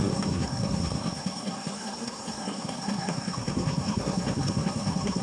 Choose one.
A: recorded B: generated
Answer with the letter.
B